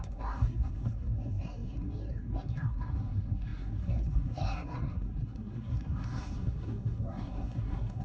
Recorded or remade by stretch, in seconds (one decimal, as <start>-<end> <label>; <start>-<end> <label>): 0.0-8.0 remade